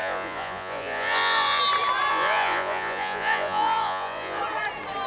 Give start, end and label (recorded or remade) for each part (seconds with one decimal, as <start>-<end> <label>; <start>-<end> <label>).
0.0-1.6 remade; 1.6-2.1 recorded; 2.1-4.4 remade; 4.4-5.1 recorded